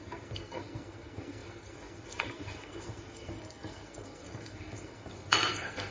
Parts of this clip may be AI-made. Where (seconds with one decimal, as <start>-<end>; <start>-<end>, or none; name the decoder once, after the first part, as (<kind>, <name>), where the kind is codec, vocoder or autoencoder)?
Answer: 0.0-5.9 (codec, SNAC)